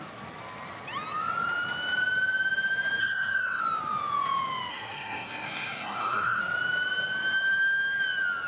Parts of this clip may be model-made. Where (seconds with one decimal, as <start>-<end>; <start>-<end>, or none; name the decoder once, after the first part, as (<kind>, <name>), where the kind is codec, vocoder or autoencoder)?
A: 3.0-3.6 (codec, SNAC); 4.7-6.4